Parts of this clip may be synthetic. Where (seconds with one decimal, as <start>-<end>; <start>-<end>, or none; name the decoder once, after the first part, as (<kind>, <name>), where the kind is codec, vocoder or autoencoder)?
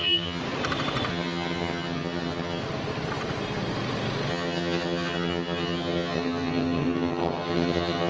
0.0-0.4 (vocoder, HiFi-GAN); 1.1-2.6; 4.3-8.1